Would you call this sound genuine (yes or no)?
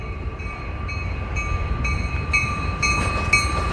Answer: yes